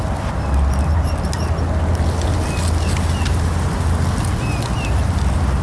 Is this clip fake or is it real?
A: real